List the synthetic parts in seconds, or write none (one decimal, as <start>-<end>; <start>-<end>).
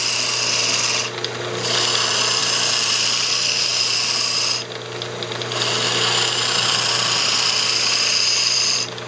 none